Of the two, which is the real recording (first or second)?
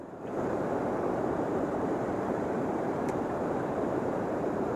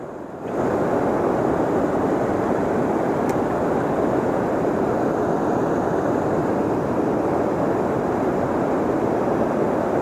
second